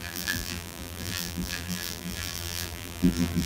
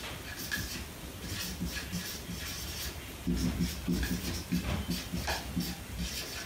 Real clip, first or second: second